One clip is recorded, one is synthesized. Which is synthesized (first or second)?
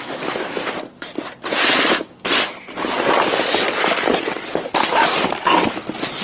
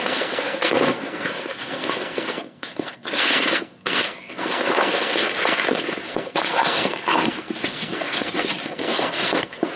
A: second